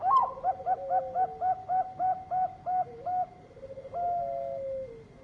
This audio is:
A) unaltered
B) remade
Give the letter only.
A